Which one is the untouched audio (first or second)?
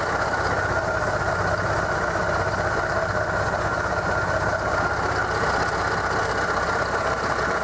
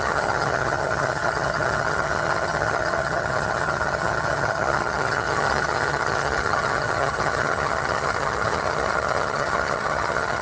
first